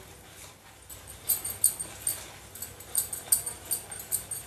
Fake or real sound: real